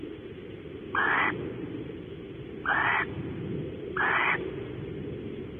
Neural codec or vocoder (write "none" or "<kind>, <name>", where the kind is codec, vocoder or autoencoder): vocoder, BigVGAN v2